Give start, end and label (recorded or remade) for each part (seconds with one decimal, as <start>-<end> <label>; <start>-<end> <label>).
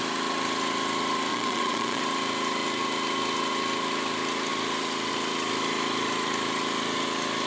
0.0-1.3 recorded; 1.3-2.0 remade; 2.0-7.5 recorded